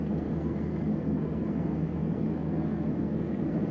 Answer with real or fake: fake